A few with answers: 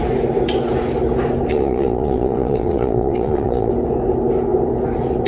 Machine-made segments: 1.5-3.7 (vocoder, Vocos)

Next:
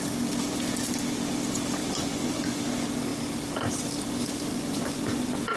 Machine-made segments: 1.8-2.6 (vocoder, Vocos); 4.5-5.6

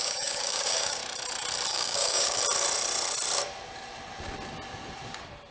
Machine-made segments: 0.0-1.0 (codec, DAC); 1.7-2.4